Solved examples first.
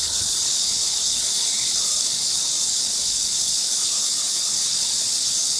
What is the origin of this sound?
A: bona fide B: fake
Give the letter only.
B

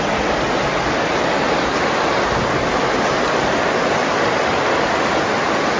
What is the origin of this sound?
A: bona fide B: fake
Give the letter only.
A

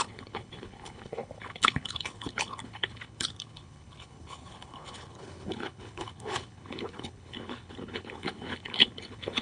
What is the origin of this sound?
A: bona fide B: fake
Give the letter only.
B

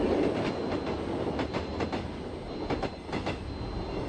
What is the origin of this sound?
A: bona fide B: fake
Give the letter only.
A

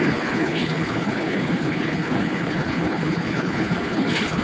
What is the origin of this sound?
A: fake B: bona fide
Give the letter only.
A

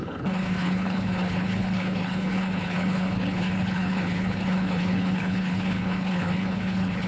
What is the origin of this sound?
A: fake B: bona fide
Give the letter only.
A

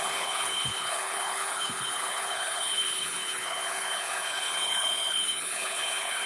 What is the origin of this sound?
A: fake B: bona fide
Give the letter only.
A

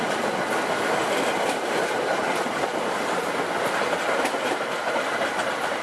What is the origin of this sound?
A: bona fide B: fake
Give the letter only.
A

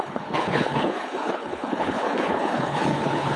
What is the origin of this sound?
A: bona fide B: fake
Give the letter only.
B